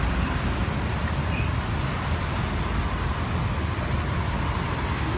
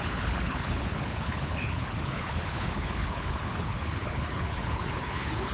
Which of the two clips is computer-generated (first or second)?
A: second